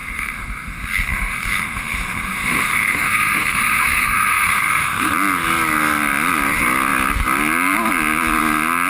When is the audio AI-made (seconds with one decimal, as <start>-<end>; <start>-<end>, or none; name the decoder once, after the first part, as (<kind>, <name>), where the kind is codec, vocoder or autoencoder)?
0.0-5.1 (autoencoder, DAC-VAE)